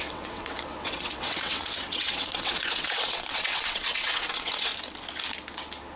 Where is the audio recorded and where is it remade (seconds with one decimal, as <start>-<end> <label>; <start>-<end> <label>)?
0.0-4.7 remade; 4.7-6.0 recorded